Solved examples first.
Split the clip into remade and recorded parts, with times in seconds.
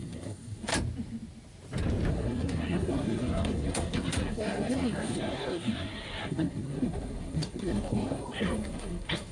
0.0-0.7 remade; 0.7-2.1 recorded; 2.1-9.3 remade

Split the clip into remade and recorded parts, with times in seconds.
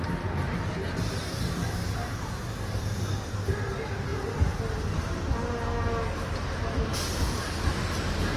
0.0-8.4 recorded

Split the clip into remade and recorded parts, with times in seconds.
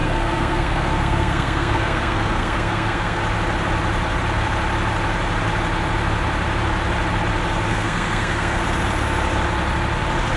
0.0-3.2 remade; 3.2-7.7 recorded; 7.7-8.6 remade; 8.6-10.4 recorded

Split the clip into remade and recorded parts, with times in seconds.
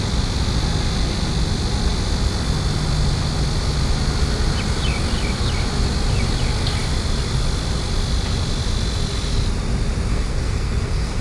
0.0-10.1 recorded; 10.1-11.2 remade